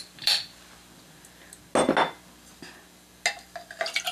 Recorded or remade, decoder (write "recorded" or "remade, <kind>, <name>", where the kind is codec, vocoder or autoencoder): recorded